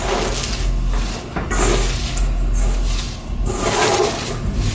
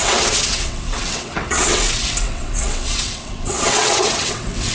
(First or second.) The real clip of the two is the first